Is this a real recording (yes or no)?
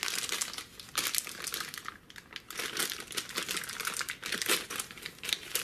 yes